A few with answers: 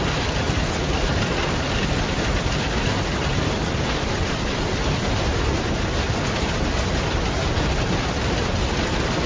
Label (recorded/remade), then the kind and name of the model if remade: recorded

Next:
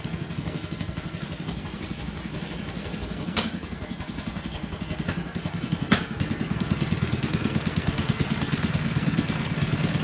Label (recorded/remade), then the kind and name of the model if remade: remade, codec, SNAC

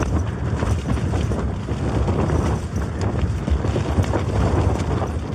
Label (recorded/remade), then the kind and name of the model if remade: remade, vocoder, BigVGAN v2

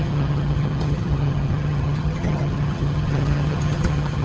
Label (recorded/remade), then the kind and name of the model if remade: remade, vocoder, HiFi-GAN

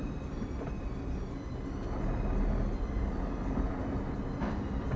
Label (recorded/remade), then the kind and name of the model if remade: recorded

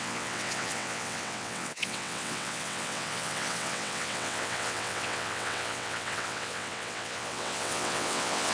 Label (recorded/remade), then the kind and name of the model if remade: remade, vocoder, WaveNeXt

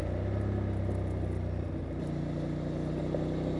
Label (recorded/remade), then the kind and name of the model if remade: recorded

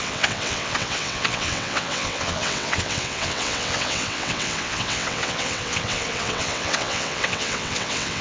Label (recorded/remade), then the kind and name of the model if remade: remade, vocoder, WaveNeXt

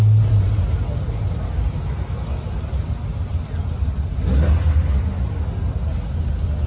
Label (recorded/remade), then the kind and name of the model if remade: recorded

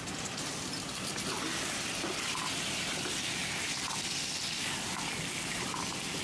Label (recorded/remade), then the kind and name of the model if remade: recorded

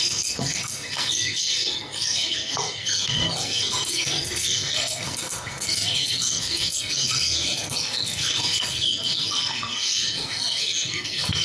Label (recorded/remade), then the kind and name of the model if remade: remade, codec, SNAC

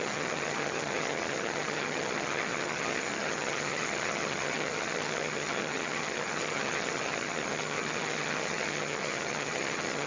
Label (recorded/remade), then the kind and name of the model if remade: remade, vocoder, HiFi-GAN